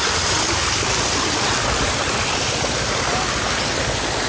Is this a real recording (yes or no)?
yes